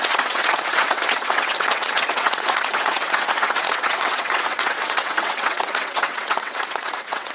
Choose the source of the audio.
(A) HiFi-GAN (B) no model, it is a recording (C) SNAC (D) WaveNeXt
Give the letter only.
D